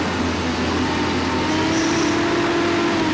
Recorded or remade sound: recorded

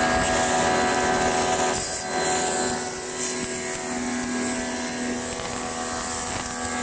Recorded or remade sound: recorded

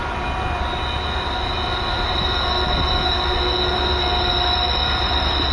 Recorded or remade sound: recorded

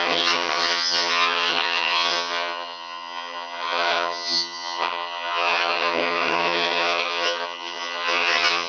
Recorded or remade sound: remade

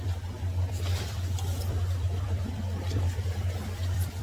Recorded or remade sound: remade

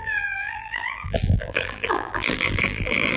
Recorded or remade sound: remade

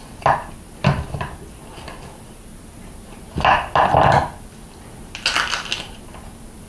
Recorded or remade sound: recorded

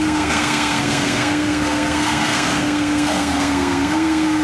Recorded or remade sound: remade